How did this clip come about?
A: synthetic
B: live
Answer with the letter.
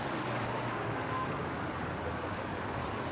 A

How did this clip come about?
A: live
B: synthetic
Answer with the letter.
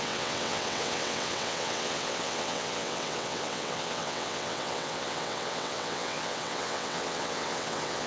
B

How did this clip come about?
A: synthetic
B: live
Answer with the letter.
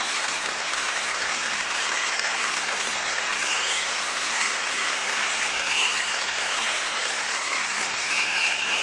A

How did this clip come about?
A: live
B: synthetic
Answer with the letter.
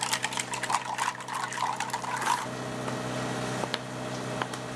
A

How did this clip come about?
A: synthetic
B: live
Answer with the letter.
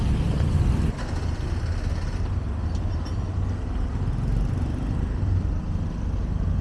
B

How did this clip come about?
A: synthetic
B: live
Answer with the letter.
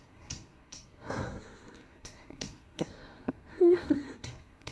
A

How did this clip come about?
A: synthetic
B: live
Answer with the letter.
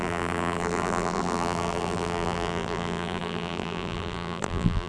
A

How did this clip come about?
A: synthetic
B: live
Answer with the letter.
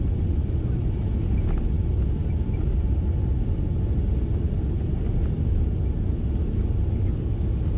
B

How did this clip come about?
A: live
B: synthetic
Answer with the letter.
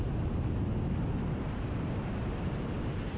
A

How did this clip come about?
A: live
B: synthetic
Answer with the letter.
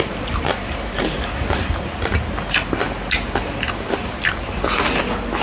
A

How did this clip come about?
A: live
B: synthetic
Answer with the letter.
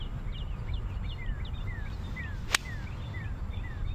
A